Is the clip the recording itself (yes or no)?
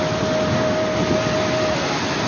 yes